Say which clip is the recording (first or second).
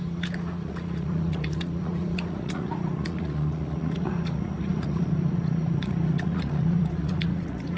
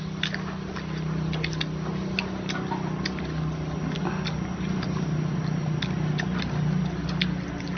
second